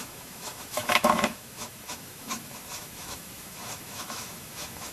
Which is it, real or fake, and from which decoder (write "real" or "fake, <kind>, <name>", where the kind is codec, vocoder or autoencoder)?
fake, autoencoder, DAC-VAE